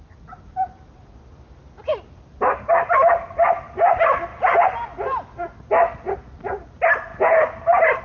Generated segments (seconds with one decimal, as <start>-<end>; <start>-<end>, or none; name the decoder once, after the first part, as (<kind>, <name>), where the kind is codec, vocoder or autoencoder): none